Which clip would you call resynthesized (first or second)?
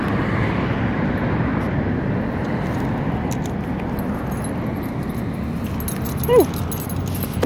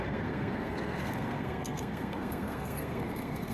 second